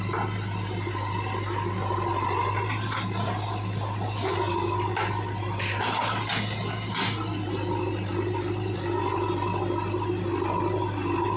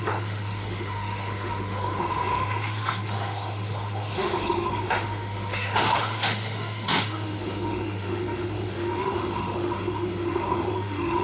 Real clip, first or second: first